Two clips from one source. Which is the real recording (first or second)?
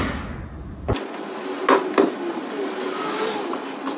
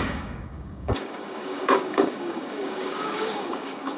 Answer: first